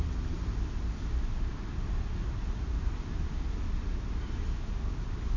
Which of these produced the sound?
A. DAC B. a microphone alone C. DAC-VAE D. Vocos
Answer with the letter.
B